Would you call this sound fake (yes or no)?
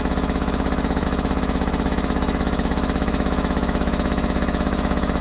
yes